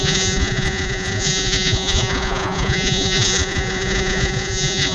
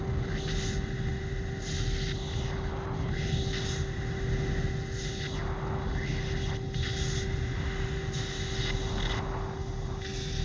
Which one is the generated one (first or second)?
first